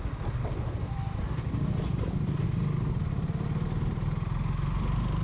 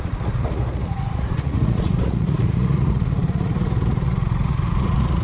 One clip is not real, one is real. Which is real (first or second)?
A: first